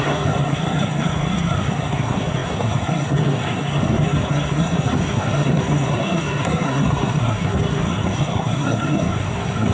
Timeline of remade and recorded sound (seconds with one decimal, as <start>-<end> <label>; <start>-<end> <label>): 0.0-9.7 remade